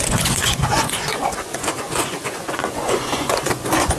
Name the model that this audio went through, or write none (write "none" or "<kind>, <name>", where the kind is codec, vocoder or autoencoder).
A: vocoder, Vocos